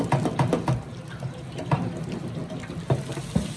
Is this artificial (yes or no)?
yes